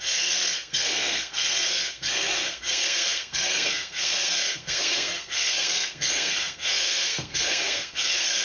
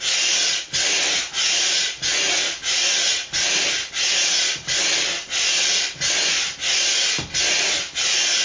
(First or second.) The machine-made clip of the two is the first